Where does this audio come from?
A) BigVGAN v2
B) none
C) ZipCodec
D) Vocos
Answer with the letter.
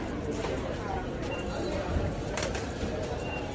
A